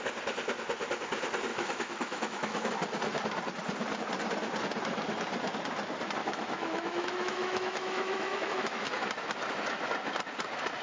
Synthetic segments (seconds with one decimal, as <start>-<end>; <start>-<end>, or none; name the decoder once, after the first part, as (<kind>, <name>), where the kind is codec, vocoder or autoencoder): 1.5-2.7 (autoencoder, DAC-VAE); 6.2-8.9